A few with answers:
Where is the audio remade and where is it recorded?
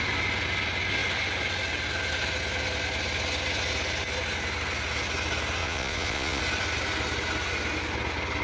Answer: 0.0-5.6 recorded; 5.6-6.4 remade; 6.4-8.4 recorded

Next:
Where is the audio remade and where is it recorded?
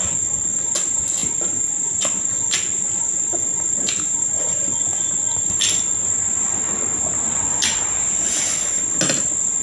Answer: 0.0-9.6 recorded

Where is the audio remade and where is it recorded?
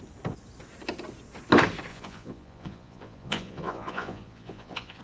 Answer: 0.0-1.9 recorded; 1.9-5.0 remade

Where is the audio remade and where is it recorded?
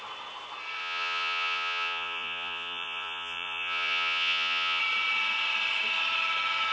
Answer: 0.0-0.8 recorded; 0.8-4.8 remade; 4.8-6.7 recorded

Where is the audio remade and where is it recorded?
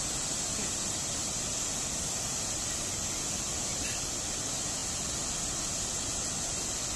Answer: 0.0-7.0 recorded